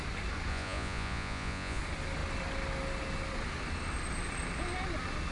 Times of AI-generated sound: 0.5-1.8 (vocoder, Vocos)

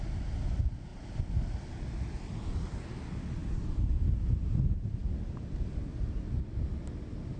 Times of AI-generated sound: none